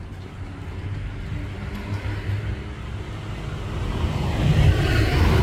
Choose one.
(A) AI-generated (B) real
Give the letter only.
B